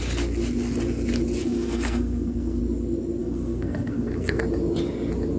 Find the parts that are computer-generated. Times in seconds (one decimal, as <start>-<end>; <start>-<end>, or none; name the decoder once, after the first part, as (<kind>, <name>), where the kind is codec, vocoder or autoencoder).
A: 1.4-2.6 (codec, SNAC); 3.2-4.4

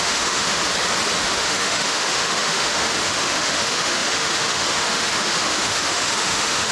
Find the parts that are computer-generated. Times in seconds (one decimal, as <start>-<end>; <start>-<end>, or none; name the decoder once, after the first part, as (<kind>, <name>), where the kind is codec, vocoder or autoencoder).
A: 0.0-0.6 (autoencoder, DAC-VAE); 1.2-6.7

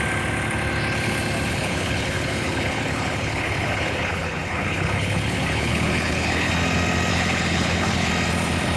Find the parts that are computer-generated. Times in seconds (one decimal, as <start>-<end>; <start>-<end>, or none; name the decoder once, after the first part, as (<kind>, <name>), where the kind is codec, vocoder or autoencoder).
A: 1.5-6.5 (codec, HILCodec); 7.1-8.1

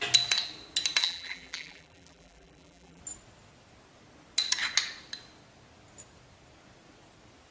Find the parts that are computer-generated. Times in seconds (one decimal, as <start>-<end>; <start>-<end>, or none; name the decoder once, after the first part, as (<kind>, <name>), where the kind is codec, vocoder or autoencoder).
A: 1.0-3.0 (vocoder, BigVGAN v2)

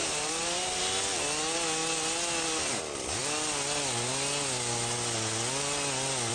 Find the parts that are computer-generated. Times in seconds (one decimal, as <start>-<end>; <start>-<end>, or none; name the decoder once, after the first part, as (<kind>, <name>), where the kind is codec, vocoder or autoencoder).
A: 0.0-0.8 (vocoder, BigVGAN v2)

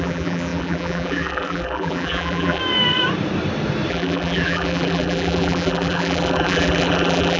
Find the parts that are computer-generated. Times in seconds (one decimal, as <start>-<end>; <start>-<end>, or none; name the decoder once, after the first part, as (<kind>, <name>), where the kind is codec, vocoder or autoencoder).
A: 0.0-2.6 (vocoder, BigVGAN v2); 3.9-7.4